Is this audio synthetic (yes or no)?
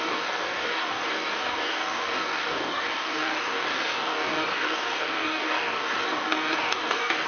yes